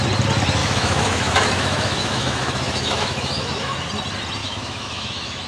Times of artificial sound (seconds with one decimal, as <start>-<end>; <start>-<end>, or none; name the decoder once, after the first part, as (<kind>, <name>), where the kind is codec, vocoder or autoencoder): 0.6-3.9 (autoencoder, DAC-VAE); 4.4-5.5